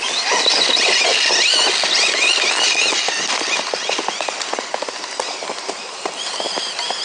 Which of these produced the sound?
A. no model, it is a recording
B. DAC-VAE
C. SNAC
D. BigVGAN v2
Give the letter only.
A